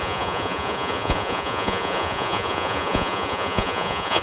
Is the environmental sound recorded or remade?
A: remade